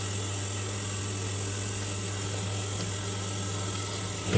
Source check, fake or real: real